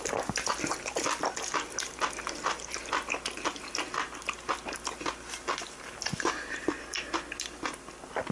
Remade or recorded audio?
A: recorded